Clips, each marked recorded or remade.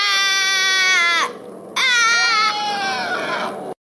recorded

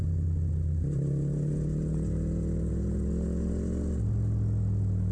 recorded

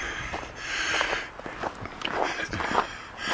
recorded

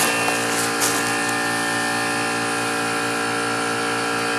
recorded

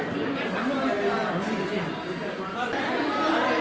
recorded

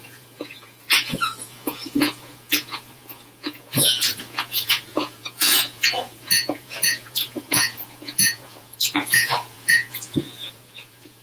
remade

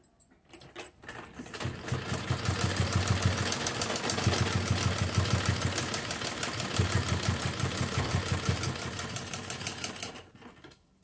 recorded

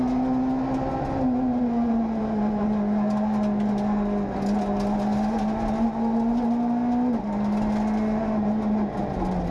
recorded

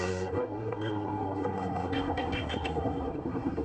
remade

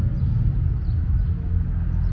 recorded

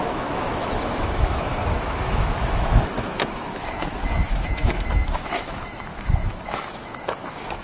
remade